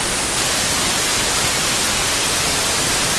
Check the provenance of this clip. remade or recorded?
recorded